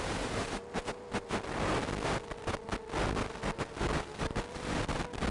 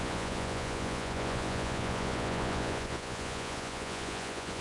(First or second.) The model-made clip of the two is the second